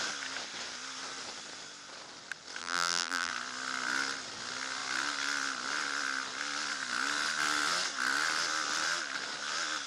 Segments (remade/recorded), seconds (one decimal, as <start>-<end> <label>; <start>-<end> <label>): 0.0-2.6 recorded; 2.6-3.3 remade; 3.3-9.9 recorded